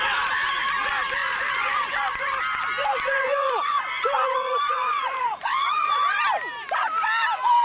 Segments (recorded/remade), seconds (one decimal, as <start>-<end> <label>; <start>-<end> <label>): 0.0-1.2 recorded; 1.2-2.4 remade; 2.4-2.8 recorded; 2.8-6.2 remade; 6.2-7.6 recorded